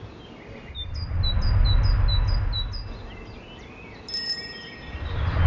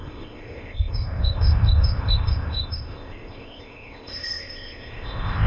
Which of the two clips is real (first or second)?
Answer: first